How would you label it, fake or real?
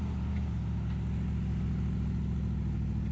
real